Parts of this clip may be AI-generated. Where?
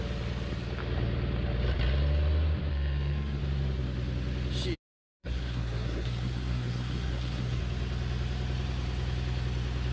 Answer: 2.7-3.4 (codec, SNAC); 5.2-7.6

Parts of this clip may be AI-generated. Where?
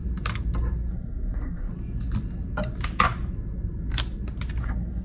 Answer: 0.9-1.7 (codec, SNAC); 4.6-5.0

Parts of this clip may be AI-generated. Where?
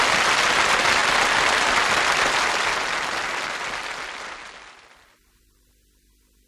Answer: none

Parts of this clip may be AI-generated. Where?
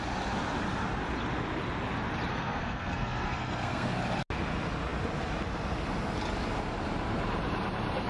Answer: 2.3-4.0 (codec, SNAC)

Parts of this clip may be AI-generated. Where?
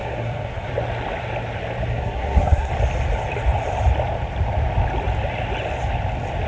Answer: 0.0-0.7 (codec, SNAC); 1.9-2.7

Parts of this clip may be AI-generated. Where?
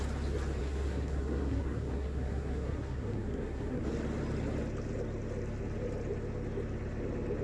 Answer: 0.6-3.8 (codec, SNAC)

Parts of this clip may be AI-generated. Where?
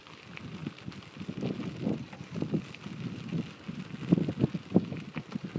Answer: none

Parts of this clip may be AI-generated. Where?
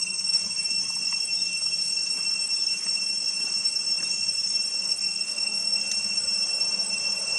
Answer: 0.0-0.4 (codec, SNAC); 4.8-5.8